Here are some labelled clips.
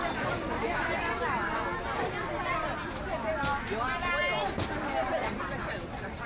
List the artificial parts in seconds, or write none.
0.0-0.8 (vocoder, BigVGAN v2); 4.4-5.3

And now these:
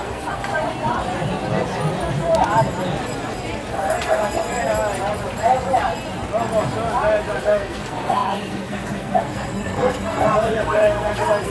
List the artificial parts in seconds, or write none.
0.0-0.5 (codec, SNAC); 3.7-4.6; 7.4-11.5

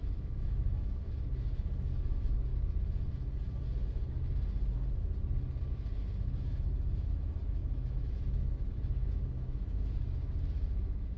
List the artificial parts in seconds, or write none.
0.0-2.5 (autoencoder, DAC-VAE); 5.7-11.2

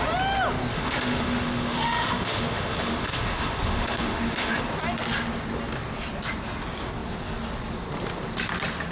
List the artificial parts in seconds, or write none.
0.7-4.6 (autoencoder, DAC-VAE)